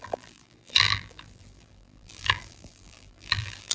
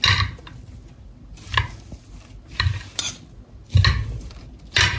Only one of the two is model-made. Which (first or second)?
first